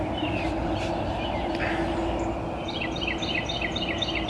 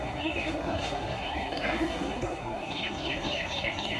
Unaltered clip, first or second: first